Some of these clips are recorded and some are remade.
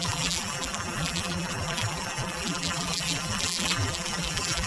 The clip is remade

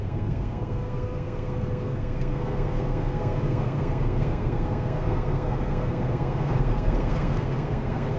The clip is remade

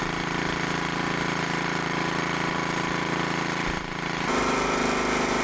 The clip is recorded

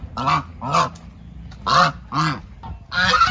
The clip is recorded